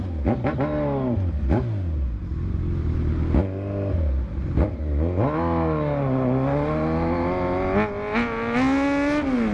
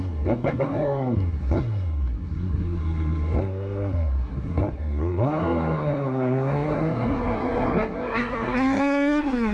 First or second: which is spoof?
second